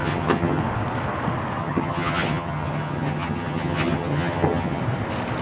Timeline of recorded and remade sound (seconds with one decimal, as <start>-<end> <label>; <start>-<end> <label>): 0.0-0.6 remade; 0.6-1.6 recorded; 1.6-4.8 remade; 4.8-5.4 recorded